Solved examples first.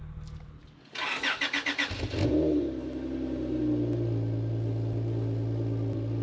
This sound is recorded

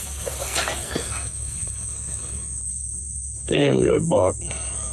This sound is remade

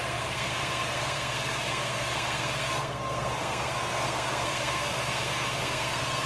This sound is remade